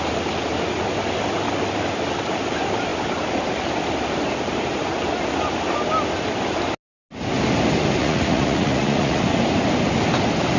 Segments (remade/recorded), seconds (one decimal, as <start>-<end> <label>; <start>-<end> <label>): 0.0-8.0 recorded; 8.0-9.2 remade; 9.2-10.6 recorded